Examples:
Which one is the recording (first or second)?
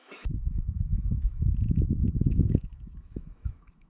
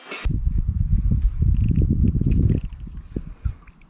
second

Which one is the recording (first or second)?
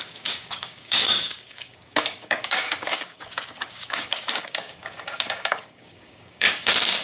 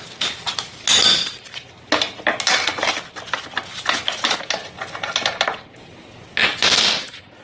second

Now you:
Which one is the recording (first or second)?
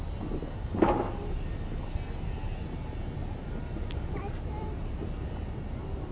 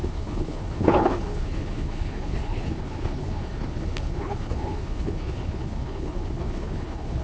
first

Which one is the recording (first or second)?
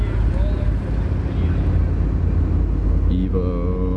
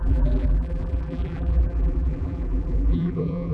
first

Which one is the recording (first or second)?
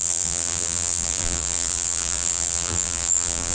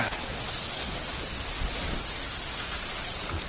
second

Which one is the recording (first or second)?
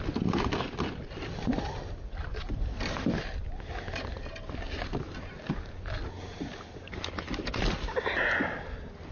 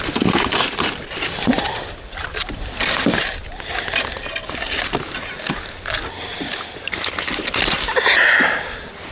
first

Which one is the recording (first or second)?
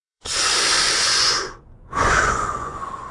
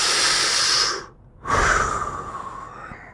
second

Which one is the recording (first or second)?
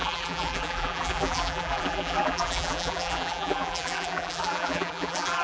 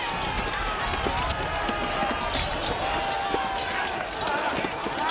second